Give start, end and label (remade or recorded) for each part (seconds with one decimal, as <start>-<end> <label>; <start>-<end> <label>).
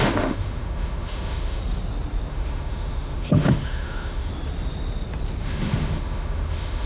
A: 0.0-1.6 remade; 1.6-2.3 recorded; 2.3-4.3 remade; 4.3-5.4 recorded; 5.4-6.9 remade